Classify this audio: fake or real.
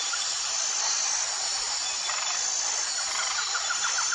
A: real